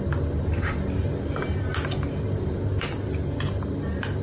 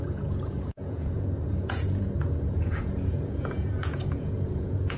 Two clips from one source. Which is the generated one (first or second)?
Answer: second